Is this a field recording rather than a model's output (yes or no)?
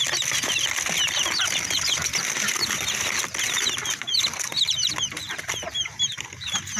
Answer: yes